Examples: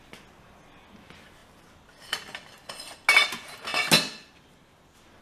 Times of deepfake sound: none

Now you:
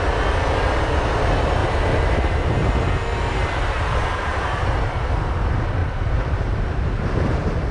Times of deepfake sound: 1.6-2.7; 3.4-4.7; 5.8-7.7

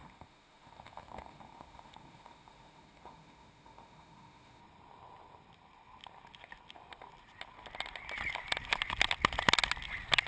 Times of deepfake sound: 0.0-4.6

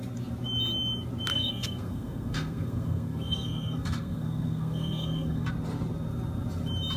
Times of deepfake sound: 1.3-5.5